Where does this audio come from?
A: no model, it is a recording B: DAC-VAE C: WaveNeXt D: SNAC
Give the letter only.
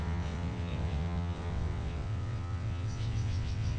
C